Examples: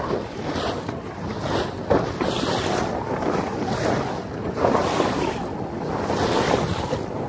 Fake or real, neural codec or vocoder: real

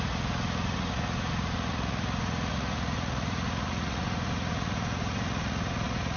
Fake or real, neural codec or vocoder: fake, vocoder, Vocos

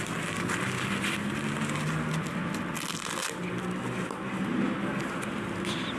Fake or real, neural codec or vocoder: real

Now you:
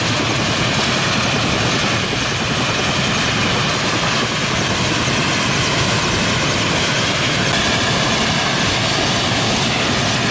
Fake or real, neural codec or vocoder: real